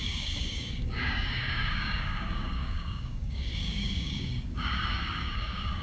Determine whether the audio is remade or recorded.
remade